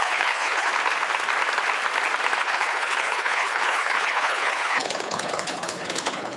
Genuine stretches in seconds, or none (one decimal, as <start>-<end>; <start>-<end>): 0.7-2.4